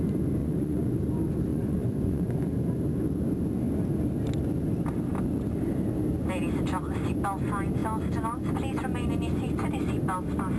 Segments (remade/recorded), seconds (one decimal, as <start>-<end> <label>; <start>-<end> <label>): 0.0-0.4 recorded; 0.4-0.9 remade; 0.9-1.5 recorded; 1.5-2.4 remade; 2.4-10.6 recorded